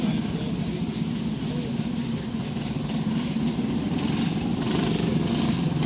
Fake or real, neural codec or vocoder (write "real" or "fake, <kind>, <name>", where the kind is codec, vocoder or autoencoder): real